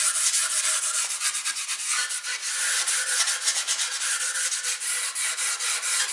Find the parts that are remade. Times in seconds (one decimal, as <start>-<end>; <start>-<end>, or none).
none